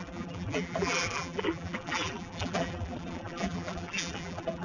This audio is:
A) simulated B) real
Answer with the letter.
A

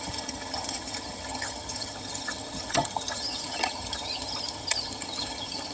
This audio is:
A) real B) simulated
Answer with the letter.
B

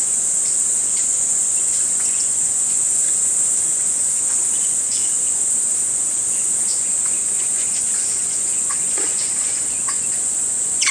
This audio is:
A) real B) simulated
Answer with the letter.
B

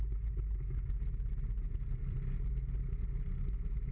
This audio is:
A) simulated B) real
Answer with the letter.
B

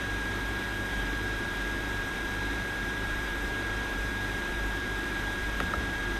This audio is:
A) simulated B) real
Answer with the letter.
A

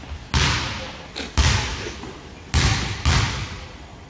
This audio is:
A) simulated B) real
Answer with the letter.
B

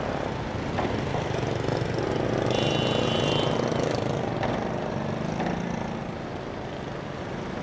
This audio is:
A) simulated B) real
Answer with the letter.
B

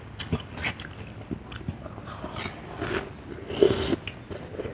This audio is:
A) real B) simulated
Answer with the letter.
A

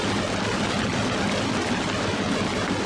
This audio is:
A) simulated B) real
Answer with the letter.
B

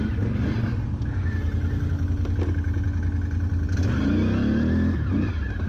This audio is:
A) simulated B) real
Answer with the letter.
B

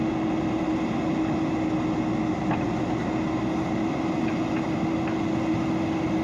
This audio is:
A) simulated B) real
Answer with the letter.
B